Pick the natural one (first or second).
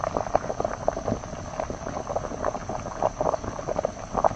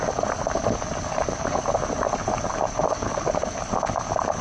first